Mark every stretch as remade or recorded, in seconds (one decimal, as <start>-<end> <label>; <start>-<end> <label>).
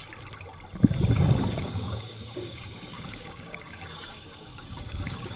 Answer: 0.0-1.1 recorded; 1.1-5.4 remade